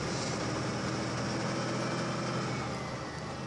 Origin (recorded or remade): recorded